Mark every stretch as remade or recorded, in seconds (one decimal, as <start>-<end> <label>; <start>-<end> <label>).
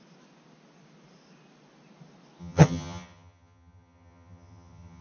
0.0-2.4 recorded; 2.4-5.0 remade